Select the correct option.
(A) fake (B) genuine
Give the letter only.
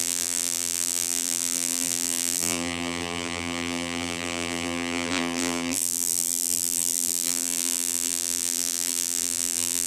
A